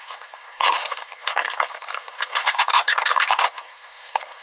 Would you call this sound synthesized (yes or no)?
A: yes